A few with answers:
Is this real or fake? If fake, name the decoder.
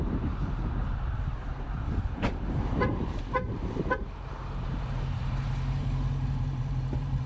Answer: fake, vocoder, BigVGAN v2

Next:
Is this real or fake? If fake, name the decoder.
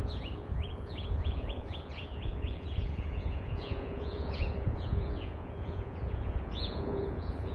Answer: fake, vocoder, Vocos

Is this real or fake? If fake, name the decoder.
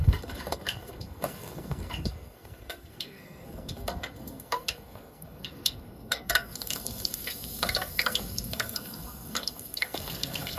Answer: fake, codec, SNAC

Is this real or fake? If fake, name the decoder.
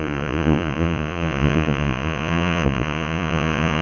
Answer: fake, vocoder, Vocos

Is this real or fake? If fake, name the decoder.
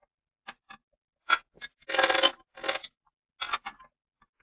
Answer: real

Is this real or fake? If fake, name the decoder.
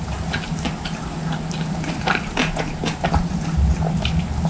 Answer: real